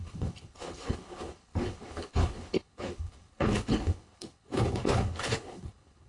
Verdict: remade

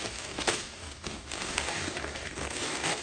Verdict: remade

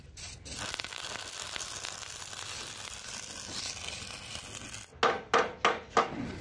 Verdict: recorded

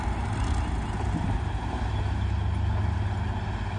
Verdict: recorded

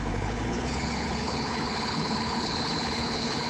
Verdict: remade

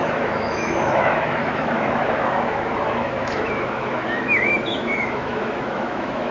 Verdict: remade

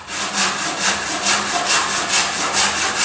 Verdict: recorded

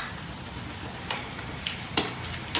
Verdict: remade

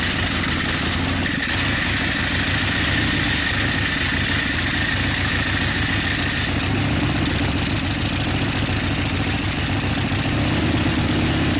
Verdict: recorded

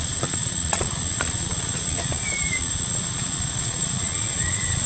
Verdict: remade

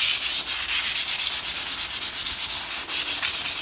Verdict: recorded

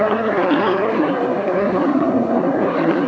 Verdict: remade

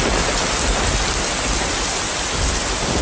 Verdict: recorded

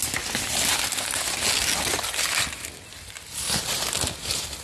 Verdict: recorded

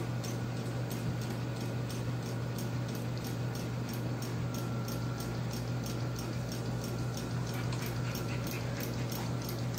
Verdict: recorded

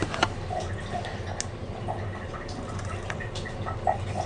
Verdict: recorded